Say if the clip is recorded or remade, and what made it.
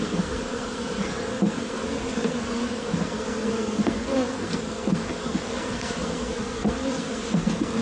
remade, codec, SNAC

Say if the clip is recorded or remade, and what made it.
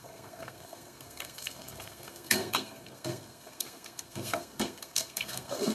remade, codec, SNAC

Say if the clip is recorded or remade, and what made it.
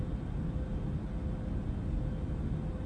recorded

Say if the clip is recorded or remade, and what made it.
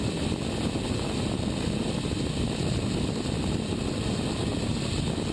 recorded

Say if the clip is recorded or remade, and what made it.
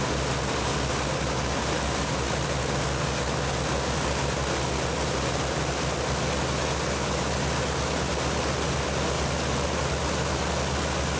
recorded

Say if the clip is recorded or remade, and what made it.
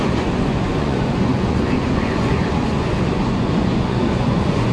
remade, vocoder, Vocos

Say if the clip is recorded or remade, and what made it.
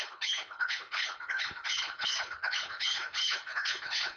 remade, codec, HILCodec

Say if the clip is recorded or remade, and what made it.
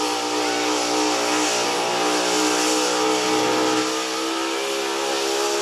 recorded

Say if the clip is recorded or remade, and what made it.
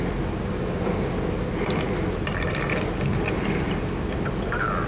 recorded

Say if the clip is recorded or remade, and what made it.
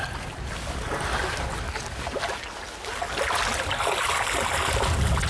recorded